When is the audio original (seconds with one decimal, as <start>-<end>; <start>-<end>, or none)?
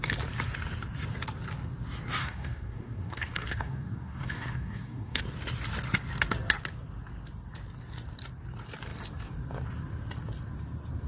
0.0-2.2; 5.2-11.1